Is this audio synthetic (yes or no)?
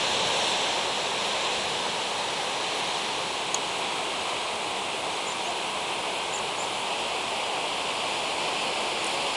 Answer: no